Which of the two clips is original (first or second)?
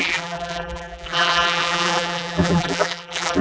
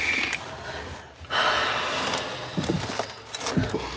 second